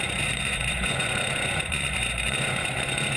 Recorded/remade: remade